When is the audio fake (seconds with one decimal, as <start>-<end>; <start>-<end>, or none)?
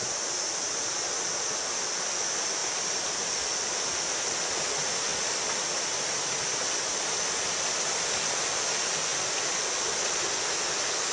2.6-3.2